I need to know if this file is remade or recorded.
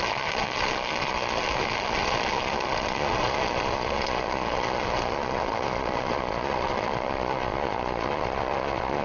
remade